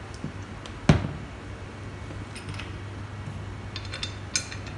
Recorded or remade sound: recorded